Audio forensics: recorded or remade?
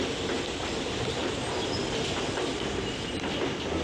recorded